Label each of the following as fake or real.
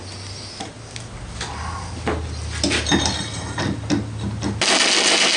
real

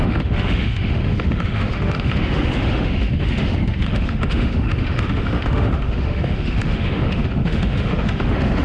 fake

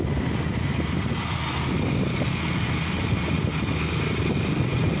real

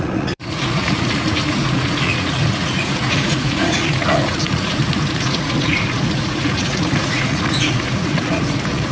fake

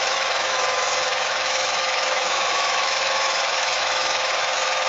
fake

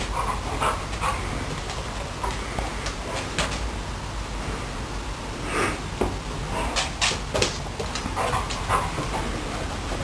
real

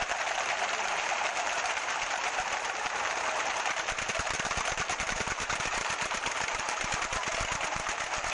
fake